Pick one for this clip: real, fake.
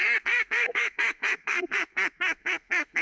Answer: fake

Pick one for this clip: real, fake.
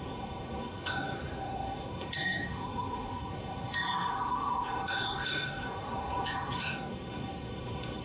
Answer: fake